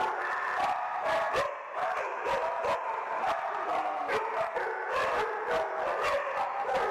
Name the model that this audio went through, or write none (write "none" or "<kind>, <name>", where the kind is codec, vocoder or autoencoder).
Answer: none